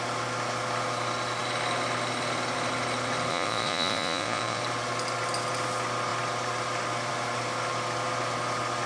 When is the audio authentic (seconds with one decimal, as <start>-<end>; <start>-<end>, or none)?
0.0-3.3; 4.6-8.9